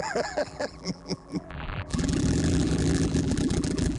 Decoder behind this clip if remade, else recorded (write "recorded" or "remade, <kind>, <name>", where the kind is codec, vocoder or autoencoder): remade, vocoder, BigVGAN v2